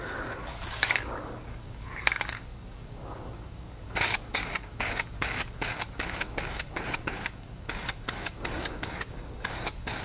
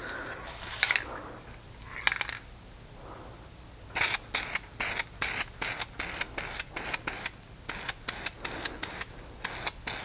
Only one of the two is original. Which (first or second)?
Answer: second